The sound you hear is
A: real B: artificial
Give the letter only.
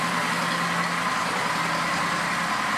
A